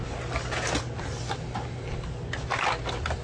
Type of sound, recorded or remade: recorded